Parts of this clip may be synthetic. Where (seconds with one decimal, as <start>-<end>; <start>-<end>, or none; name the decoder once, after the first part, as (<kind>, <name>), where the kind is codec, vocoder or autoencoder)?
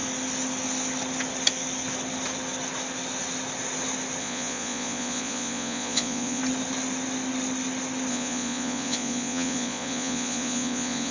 4.2-6.4 (vocoder, Vocos); 8.1-11.1